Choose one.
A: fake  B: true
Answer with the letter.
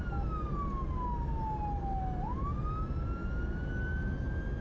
B